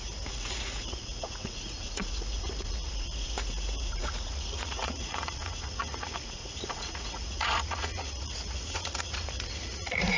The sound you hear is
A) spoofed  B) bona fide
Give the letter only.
A